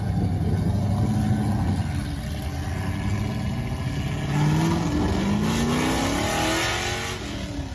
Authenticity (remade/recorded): recorded